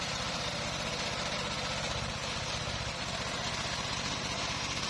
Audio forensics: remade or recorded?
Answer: recorded